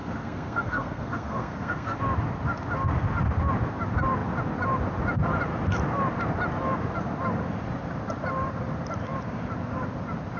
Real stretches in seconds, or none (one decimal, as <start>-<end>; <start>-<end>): 2.0-10.4